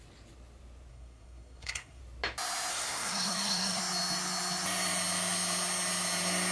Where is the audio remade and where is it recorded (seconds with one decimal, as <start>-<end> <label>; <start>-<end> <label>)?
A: 0.0-0.9 recorded; 0.9-2.0 remade; 2.0-2.7 recorded; 2.7-3.8 remade; 3.8-6.5 recorded